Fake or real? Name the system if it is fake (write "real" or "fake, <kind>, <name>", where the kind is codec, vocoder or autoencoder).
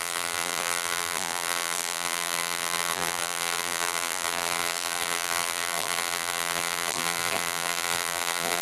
fake, vocoder, BigVGAN v2